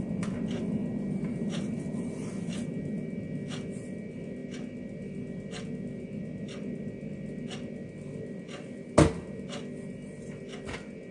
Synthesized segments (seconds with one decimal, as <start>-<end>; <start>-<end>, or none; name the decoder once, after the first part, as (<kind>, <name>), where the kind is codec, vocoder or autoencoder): none